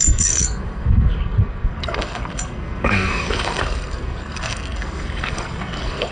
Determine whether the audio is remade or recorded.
remade